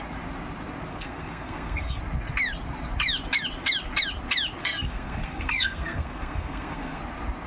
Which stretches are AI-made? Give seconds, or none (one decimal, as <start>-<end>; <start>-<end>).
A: 0.9-2.0; 4.6-7.0